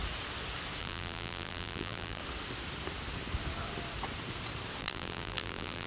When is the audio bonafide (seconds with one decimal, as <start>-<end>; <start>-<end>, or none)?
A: 0.0-0.8; 2.2-4.8